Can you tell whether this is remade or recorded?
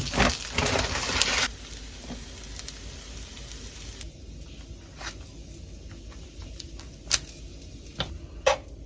recorded